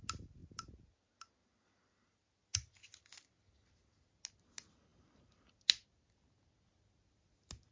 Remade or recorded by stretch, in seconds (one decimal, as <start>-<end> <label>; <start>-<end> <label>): 0.0-7.7 recorded